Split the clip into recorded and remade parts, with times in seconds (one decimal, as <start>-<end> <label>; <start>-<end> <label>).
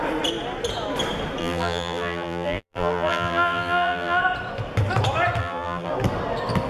0.0-1.4 recorded; 1.4-4.2 remade; 4.2-5.4 recorded; 5.4-5.9 remade; 5.9-6.7 recorded